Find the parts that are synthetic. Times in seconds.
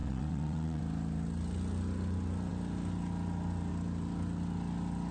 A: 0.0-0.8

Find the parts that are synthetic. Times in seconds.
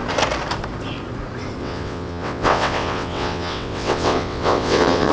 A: 1.6-5.1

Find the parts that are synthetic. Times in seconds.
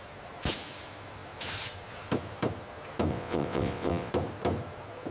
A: 3.1-4.1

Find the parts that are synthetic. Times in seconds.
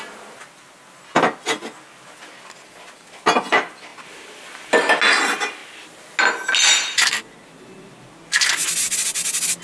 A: none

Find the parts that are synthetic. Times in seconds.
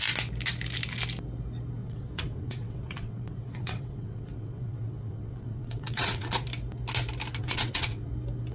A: 1.8-6.3; 7.4-8.1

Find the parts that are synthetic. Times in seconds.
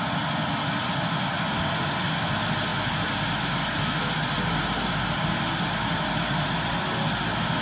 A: none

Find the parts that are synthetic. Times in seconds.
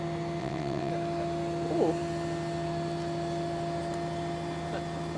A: 0.4-0.9